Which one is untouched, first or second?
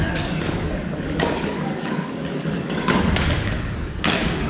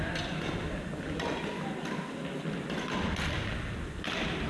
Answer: second